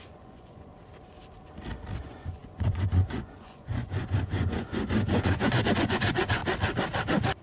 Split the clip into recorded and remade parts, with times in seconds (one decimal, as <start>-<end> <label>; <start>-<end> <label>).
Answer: 0.0-0.7 remade; 0.7-2.0 recorded; 2.0-6.4 remade; 6.4-7.4 recorded